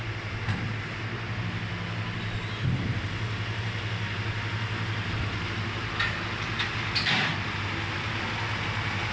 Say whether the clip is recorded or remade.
recorded